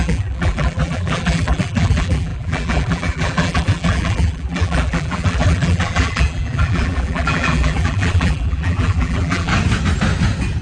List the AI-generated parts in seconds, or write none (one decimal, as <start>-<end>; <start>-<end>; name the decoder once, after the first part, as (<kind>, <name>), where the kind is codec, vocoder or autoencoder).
0.0-9.5 (vocoder, BigVGAN v2)